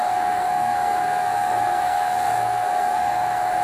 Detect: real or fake fake